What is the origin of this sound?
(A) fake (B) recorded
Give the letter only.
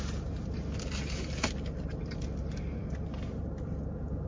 B